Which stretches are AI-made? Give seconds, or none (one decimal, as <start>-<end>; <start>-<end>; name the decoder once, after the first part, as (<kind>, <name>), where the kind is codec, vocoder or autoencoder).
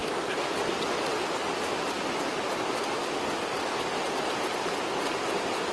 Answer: none